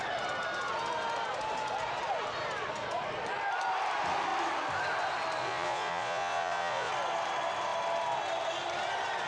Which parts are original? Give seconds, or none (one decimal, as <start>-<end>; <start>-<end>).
0.0-5.4; 6.9-9.3